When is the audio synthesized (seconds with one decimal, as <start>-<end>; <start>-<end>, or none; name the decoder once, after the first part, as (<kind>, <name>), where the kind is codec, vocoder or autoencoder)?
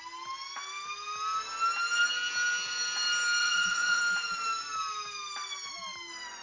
3.4-4.0 (vocoder, Vocos)